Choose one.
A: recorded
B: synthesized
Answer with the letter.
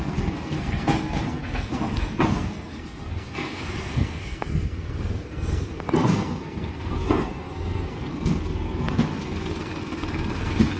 B